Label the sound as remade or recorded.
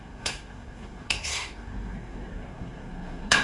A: remade